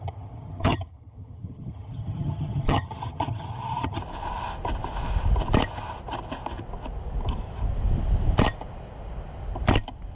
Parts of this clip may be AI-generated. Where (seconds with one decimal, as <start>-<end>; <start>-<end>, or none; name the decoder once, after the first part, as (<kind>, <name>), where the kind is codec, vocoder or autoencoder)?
0.0-4.0 (vocoder, HiFi-GAN)